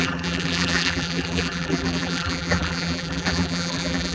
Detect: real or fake fake